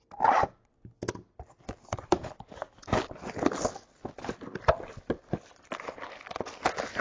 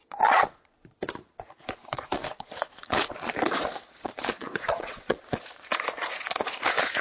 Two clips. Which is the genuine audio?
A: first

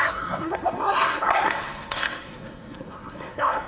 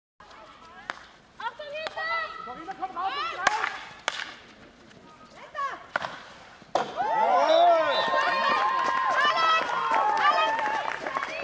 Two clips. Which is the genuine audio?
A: second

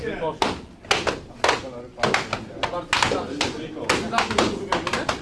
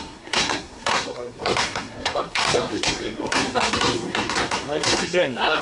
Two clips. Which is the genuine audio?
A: first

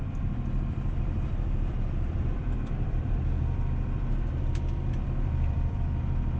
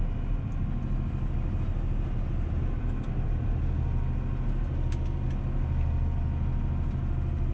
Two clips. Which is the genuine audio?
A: second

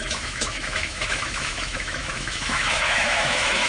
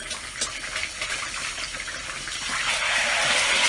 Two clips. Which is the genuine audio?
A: second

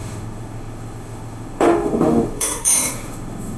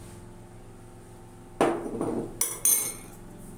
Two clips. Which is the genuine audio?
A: second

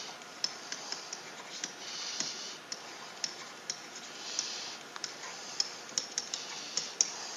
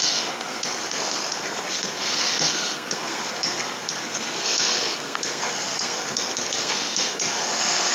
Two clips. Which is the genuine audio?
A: first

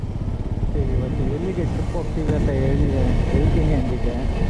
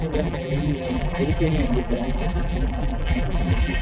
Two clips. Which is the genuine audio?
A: first